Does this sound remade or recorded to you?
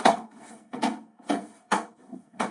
remade